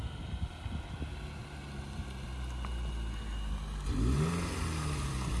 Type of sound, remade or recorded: recorded